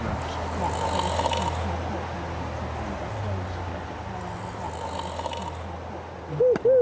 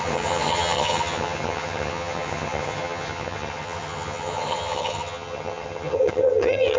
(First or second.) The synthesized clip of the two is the second